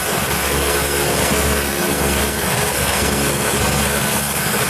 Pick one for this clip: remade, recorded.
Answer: remade